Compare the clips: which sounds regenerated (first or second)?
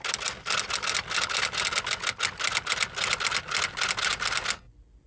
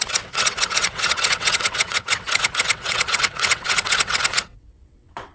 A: second